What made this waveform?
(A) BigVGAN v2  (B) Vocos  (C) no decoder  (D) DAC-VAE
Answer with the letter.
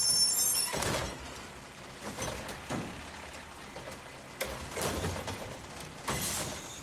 C